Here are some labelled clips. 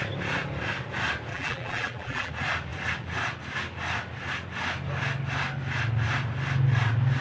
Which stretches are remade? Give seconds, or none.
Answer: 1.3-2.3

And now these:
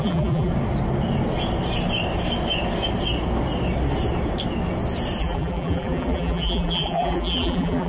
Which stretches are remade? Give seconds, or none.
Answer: 0.0-0.5; 5.2-7.9

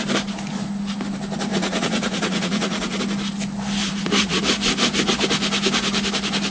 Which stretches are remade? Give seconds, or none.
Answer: 1.5-3.0; 3.8-4.4

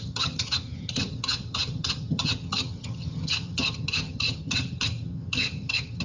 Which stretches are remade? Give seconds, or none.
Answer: 0.0-6.0

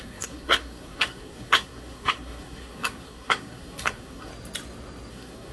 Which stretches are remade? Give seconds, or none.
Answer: 0.0-4.3; 5.1-5.5

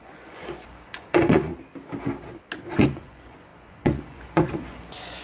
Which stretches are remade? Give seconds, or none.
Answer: 0.0-1.5; 2.6-5.2

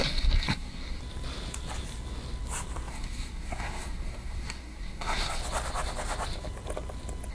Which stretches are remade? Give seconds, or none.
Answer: 0.0-1.0; 2.9-5.4

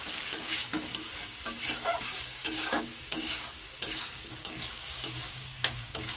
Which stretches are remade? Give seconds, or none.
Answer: 0.0-0.7; 2.0-6.2